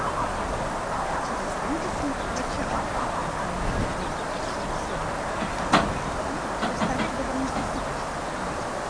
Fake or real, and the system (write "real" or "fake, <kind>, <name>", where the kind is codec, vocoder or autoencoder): real